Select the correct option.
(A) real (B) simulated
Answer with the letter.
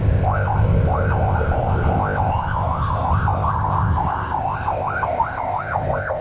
B